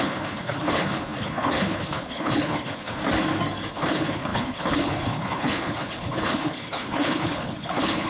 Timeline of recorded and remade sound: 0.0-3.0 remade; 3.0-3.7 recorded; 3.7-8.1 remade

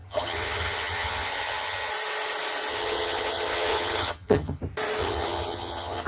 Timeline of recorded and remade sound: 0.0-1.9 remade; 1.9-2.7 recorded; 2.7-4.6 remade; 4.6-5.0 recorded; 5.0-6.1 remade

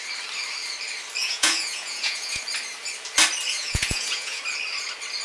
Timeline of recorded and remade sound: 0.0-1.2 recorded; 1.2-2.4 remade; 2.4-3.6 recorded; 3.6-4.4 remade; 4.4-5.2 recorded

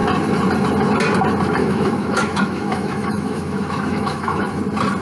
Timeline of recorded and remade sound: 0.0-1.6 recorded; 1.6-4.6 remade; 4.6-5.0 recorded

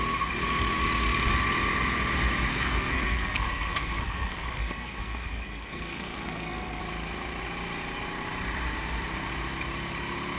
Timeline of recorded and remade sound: 0.0-2.5 recorded; 2.5-6.8 remade; 6.8-10.4 recorded

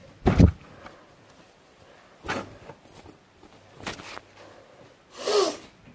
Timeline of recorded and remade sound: 0.0-5.9 recorded

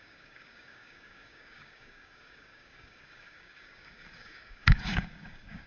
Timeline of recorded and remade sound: 0.0-5.7 remade